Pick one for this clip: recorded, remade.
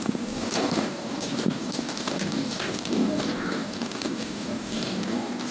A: remade